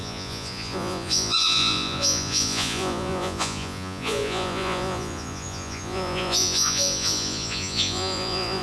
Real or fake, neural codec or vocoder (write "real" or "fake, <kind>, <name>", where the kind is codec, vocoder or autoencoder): fake, vocoder, Vocos